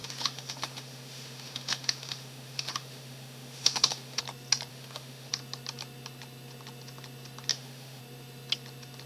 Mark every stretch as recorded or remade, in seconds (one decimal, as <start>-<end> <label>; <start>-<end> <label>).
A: 0.0-4.2 remade; 4.2-4.7 recorded; 4.7-5.3 remade; 5.3-7.5 recorded; 7.5-8.0 remade; 8.0-9.1 recorded